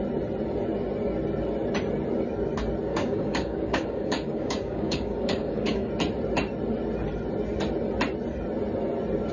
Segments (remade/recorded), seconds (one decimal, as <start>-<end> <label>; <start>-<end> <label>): 0.0-2.9 recorded; 2.9-5.9 remade; 5.9-9.3 recorded